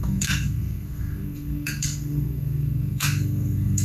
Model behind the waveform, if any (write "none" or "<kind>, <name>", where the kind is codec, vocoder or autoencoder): codec, SNAC